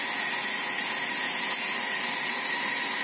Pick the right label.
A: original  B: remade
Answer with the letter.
A